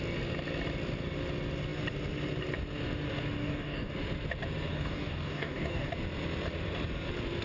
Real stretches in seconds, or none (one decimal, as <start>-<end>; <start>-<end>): 0.0-3.4; 3.9-4.7; 5.9-7.4

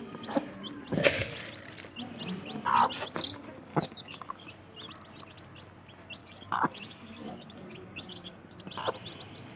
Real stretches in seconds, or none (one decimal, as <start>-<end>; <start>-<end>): 0.0-3.7; 4.5-6.2; 8.6-9.6

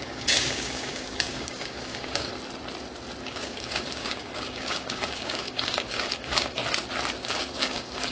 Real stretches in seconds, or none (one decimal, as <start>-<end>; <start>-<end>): 2.3-3.2; 6.6-7.2

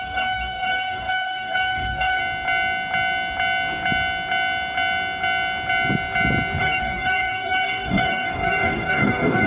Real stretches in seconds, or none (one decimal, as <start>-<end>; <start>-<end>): 2.2-6.6

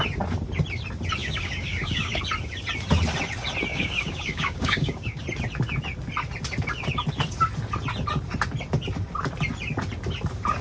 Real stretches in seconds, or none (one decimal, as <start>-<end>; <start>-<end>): 0.0-1.2; 2.2-3.7; 5.2-10.6

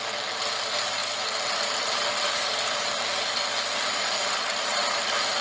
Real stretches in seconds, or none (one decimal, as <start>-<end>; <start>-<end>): 0.0-5.4